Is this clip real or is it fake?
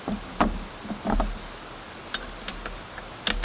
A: real